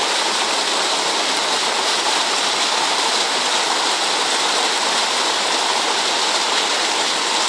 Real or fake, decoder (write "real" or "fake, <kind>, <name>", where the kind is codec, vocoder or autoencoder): real